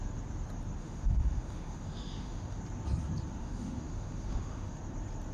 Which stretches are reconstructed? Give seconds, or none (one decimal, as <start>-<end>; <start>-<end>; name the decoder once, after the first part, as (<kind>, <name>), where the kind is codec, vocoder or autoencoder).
0.8-2.6 (autoencoder, DAC-VAE); 3.4-4.8